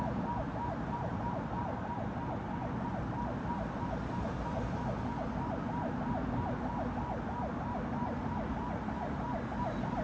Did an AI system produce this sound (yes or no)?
no